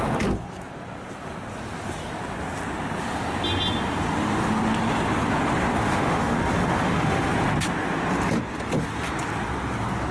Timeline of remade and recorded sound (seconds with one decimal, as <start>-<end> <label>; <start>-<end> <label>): 0.0-5.8 recorded; 5.8-7.3 remade; 7.3-10.1 recorded